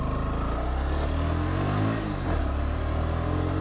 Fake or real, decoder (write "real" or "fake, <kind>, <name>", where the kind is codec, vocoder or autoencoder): real